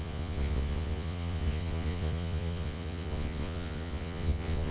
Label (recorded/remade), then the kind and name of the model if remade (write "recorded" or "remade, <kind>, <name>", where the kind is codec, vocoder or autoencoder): remade, vocoder, Vocos